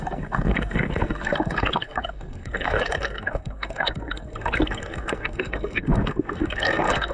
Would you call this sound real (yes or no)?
no